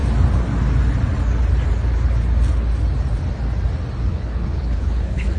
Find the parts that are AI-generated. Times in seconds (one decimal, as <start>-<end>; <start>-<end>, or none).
4.1-5.4